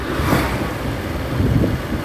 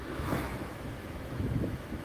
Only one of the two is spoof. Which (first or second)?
second